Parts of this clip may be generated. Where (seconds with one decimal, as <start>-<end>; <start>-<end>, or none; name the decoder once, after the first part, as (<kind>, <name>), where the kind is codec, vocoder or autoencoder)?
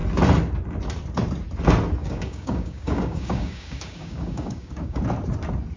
2.0-5.0 (codec, DAC)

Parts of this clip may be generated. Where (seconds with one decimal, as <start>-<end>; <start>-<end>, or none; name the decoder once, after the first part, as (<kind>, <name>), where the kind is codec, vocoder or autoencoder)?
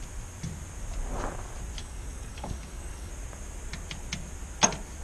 1.8-3.1 (codec, DAC)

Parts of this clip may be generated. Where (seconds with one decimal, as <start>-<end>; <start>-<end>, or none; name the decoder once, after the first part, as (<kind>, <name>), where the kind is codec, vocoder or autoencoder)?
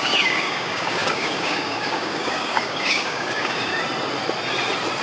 0.0-3.7 (codec, DAC)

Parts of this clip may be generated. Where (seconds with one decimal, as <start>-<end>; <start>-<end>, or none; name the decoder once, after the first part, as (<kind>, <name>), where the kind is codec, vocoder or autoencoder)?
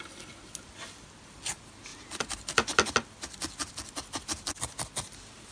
none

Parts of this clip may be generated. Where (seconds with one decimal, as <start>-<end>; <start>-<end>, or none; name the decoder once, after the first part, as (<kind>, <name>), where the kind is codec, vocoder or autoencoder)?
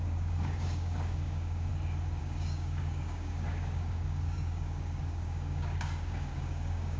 0.0-1.7 (codec, DAC); 2.2-7.0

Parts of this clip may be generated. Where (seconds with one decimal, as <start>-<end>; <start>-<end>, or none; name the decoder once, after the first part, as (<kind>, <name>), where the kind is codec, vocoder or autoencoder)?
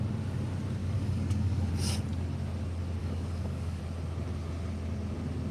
0.8-1.7 (codec, DAC); 3.0-3.8